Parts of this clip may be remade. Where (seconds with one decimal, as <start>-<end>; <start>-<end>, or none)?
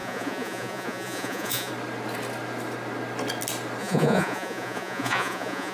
0.0-1.7; 3.8-5.7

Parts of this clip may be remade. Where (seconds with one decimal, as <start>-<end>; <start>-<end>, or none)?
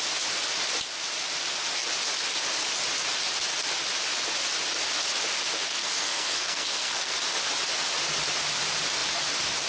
5.8-7.2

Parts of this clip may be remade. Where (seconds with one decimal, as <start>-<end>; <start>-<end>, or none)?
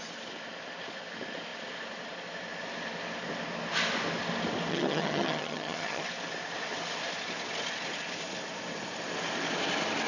4.7-6.0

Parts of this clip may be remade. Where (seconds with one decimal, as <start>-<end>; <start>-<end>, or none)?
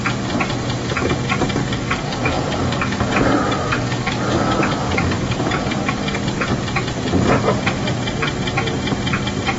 1.6-5.9